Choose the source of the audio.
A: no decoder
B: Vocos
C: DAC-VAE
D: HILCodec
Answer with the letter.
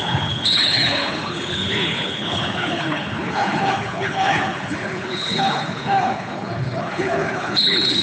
D